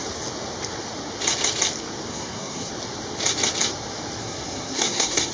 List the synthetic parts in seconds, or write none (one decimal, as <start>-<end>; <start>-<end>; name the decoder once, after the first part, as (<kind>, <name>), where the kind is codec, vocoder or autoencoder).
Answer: 2.1-2.7 (codec, SNAC); 4.2-5.3